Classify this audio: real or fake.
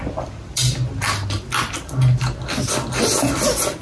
real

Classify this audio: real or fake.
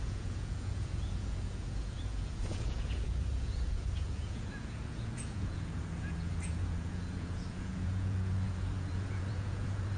fake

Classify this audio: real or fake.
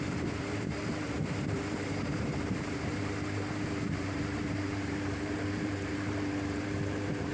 fake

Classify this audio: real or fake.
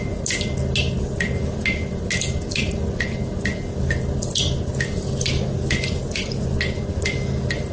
real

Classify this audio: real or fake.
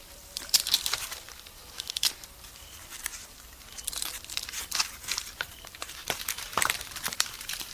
fake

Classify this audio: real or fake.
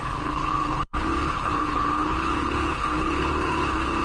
fake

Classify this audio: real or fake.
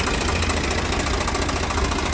real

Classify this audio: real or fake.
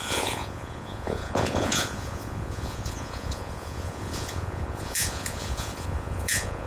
fake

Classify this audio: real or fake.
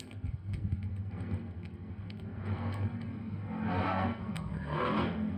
fake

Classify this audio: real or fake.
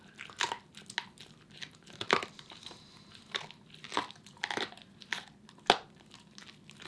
real